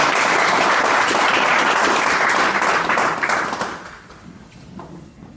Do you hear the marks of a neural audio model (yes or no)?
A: no